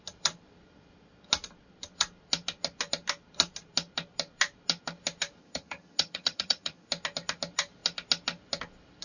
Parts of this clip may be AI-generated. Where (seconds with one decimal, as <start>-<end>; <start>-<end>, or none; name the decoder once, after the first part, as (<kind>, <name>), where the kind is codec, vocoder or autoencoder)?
5.4-6.9 (vocoder, HiFi-GAN)